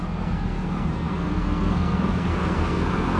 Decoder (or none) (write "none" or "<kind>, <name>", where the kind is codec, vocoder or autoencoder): codec, SNAC